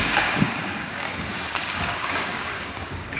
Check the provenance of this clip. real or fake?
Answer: fake